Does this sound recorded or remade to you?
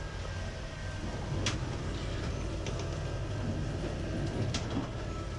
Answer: recorded